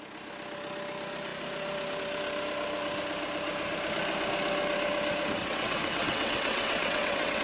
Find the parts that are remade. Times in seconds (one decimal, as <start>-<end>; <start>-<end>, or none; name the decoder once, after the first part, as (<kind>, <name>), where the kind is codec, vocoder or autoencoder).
5.4-7.4 (vocoder, WaveNeXt)